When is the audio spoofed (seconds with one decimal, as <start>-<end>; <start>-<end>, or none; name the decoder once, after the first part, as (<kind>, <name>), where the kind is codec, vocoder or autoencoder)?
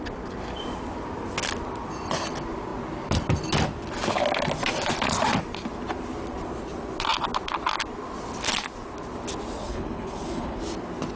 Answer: 9.6-10.6 (codec, HILCodec)